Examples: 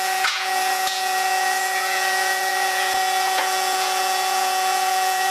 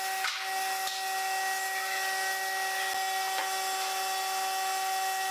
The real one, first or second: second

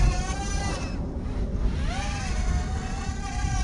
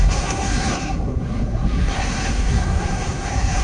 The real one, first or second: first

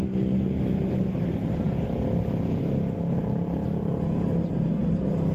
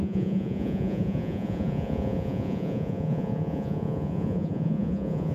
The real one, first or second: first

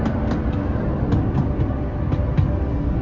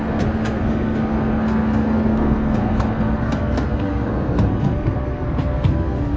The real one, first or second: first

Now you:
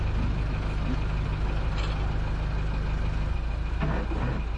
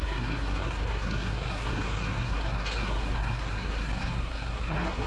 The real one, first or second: first